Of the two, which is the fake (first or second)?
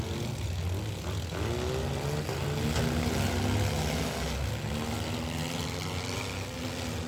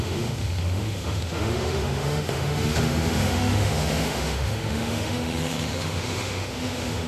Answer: second